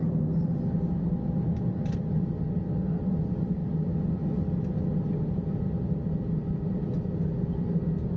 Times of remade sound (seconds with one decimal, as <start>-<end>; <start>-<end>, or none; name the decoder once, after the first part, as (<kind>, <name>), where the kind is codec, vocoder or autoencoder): none